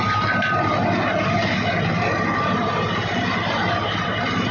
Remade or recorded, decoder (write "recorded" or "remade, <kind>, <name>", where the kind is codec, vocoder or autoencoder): recorded